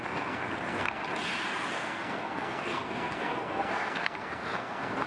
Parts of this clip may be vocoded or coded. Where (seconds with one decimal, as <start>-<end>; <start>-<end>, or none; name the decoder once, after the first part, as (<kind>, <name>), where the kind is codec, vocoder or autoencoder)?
0.0-1.0 (codec, SNAC); 1.7-5.1

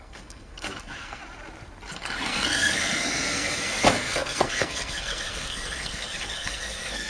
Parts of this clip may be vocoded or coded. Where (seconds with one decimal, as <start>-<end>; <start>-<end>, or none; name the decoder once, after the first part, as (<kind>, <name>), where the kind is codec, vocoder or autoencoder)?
0.0-1.2 (codec, SNAC); 1.9-7.1

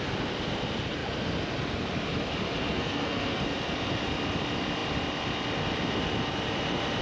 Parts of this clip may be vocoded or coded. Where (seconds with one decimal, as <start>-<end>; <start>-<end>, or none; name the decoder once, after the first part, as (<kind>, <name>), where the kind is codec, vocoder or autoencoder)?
2.7-3.4 (codec, SNAC)